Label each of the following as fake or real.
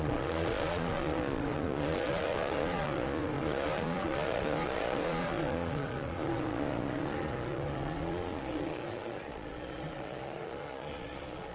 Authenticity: fake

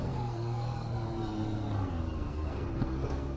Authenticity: fake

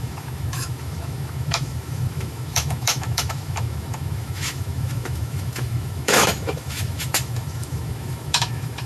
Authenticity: fake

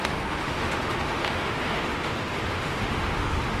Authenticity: fake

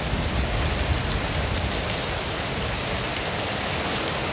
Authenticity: real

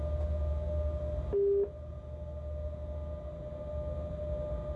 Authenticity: real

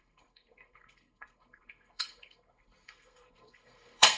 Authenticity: fake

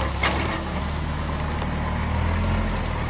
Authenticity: real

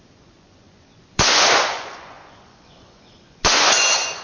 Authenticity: fake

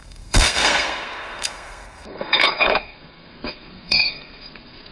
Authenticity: fake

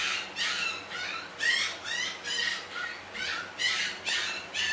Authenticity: fake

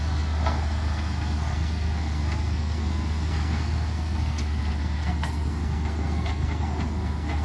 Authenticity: fake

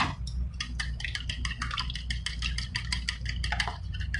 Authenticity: real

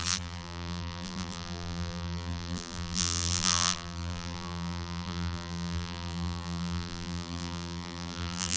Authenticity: fake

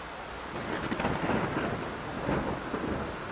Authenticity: real